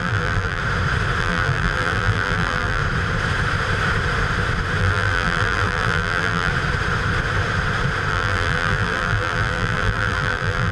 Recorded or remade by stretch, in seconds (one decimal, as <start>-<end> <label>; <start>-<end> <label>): 0.0-0.6 remade; 0.6-1.2 recorded; 1.2-2.8 remade; 2.8-4.8 recorded; 4.8-6.5 remade; 6.5-8.1 recorded; 8.1-10.7 remade